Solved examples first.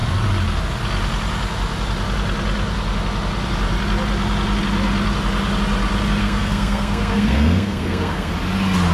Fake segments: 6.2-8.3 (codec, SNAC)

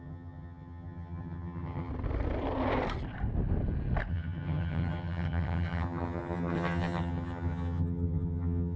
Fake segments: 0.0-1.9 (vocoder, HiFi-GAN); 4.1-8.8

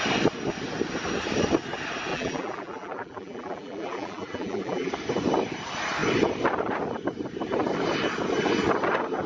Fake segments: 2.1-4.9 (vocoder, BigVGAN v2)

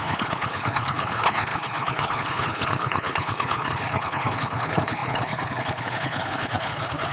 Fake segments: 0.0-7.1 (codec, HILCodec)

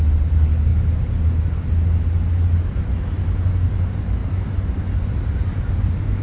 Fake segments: none

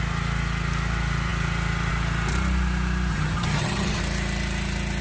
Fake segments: 3.1-4.0 (vocoder, HiFi-GAN)

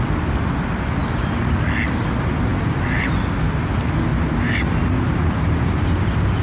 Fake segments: 2.5-3.2 (vocoder, BigVGAN v2); 4.1-5.7

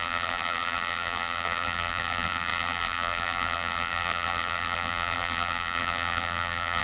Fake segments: 0.0-6.8 (vocoder, BigVGAN v2)